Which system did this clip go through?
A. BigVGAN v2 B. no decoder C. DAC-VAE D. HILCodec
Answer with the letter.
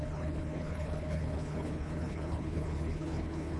D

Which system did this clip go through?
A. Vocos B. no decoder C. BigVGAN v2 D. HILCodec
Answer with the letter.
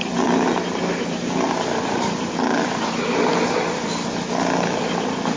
B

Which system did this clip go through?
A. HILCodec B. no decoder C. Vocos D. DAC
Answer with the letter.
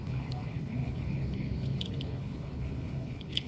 A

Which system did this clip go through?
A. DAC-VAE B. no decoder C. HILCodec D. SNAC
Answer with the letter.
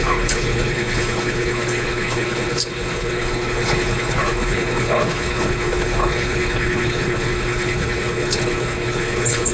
C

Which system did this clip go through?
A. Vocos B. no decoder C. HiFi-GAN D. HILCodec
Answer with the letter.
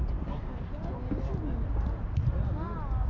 B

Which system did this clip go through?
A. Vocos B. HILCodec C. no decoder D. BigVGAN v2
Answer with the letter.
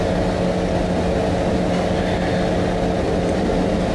C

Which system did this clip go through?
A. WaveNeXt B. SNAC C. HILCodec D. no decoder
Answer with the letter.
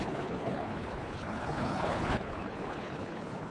C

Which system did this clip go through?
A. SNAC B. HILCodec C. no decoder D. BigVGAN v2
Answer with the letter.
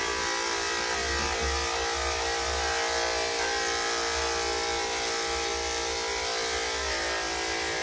C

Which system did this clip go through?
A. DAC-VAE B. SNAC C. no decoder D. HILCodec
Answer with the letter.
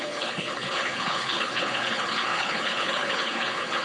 D